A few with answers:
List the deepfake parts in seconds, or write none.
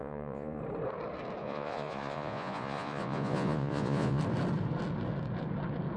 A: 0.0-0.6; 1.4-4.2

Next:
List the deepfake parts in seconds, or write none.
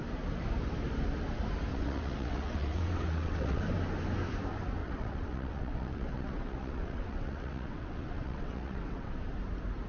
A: 1.7-3.6; 4.8-9.1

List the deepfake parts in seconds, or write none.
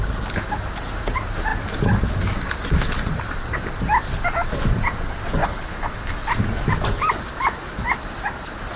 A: 5.4-6.3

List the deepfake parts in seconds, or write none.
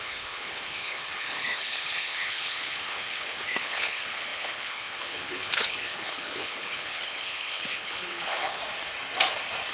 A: 0.0-8.6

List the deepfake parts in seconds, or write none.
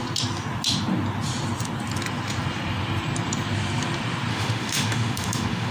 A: 4.3-5.7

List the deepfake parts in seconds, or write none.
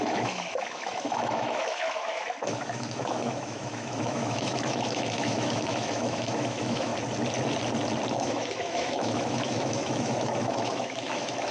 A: 0.0-6.9; 8.1-11.5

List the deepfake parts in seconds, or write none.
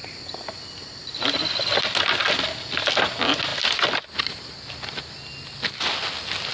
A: none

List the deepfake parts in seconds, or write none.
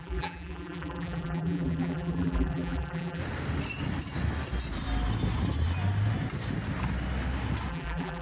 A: 0.0-3.2; 7.7-8.2